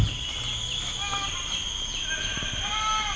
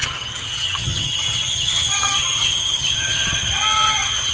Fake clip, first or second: second